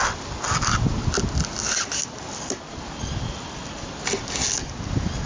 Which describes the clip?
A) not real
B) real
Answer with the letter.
B